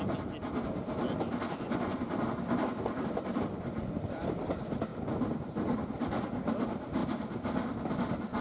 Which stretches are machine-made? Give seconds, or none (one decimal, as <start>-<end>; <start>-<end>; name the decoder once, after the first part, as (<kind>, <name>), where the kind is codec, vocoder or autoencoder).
none